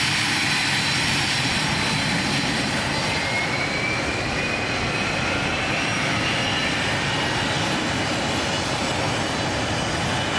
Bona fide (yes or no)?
yes